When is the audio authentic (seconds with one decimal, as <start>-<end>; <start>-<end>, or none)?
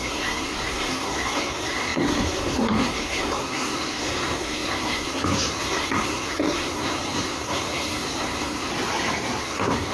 8.7-9.4